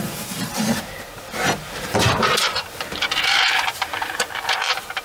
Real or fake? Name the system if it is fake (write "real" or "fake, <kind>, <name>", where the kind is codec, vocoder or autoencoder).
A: fake, vocoder, BigVGAN v2